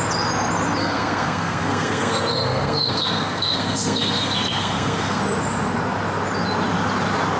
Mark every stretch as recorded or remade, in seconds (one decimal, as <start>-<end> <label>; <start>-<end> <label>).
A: 0.0-0.8 recorded; 0.8-5.2 remade; 5.2-7.4 recorded